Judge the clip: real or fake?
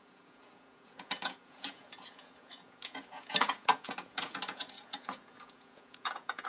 fake